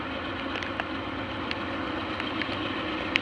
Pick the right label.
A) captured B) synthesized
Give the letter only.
A